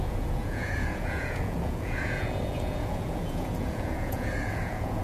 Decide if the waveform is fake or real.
fake